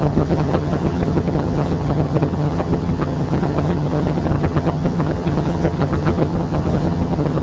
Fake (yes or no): yes